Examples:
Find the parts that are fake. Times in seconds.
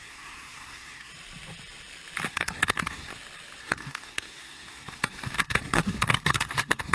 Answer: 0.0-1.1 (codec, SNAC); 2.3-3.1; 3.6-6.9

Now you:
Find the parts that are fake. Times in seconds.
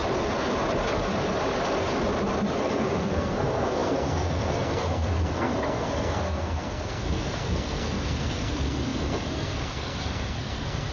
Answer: 2.6-10.9 (codec, SNAC)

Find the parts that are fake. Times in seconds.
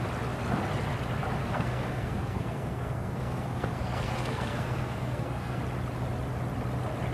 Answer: 1.4-5.6 (codec, SNAC)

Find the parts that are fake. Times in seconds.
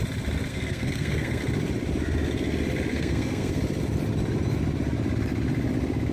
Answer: 0.5-1.4 (codec, SNAC); 2.9-3.6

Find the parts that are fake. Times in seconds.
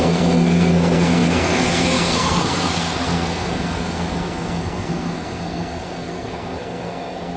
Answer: 0.0-7.4 (codec, SNAC)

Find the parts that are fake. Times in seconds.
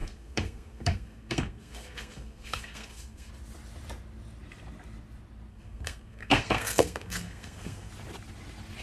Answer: 0.0-3.3 (codec, SNAC); 5.5-7.9